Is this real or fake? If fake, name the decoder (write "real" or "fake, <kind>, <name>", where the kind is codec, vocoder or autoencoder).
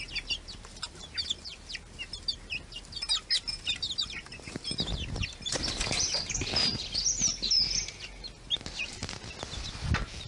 real